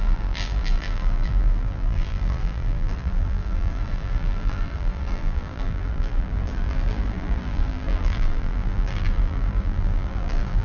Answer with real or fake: fake